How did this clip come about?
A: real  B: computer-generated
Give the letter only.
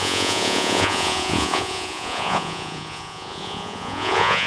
B